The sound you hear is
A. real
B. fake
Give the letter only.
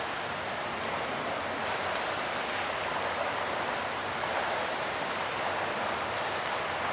A